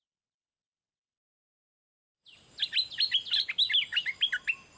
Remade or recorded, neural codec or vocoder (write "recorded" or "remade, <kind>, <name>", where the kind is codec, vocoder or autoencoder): recorded